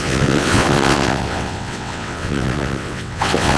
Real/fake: fake